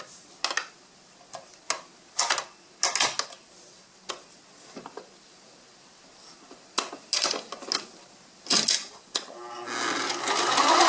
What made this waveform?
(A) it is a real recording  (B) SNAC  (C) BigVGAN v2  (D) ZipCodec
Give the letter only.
A